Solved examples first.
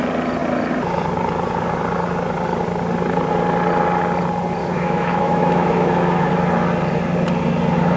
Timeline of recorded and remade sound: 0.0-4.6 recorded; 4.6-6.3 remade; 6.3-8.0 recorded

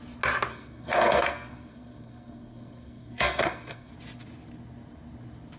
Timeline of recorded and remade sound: 0.0-0.5 recorded; 0.5-3.9 remade; 3.9-5.6 recorded

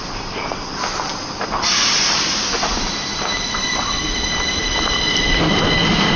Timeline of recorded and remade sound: 0.0-6.2 remade